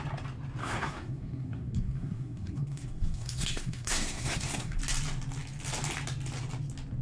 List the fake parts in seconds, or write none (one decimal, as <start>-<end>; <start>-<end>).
0.6-4.8